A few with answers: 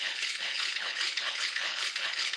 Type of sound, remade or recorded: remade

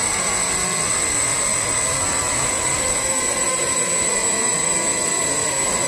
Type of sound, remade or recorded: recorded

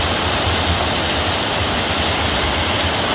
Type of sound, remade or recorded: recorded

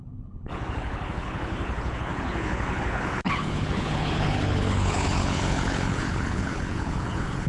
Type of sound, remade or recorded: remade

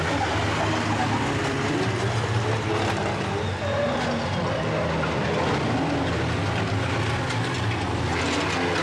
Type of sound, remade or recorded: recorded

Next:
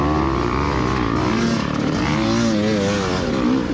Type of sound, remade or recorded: recorded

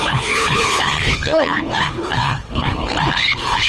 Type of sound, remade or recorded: remade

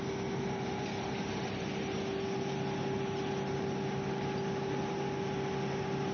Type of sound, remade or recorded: recorded